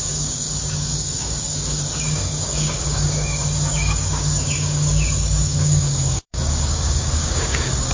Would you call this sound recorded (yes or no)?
no